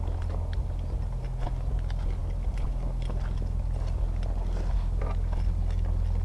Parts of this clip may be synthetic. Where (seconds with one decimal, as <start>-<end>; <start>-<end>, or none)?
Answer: none